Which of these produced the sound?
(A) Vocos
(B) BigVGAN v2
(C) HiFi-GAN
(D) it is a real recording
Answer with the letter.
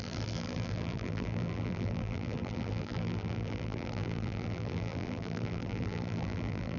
B